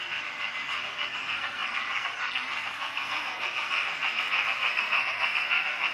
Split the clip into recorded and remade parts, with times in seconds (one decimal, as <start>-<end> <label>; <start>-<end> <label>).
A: 0.0-5.9 remade